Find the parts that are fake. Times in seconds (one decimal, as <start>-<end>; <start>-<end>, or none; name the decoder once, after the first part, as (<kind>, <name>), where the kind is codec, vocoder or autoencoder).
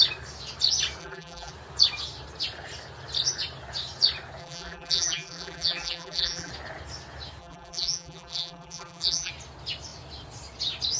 1.0-1.5 (vocoder, BigVGAN v2); 4.4-6.5; 7.4-9.3